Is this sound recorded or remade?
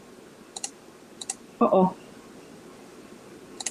recorded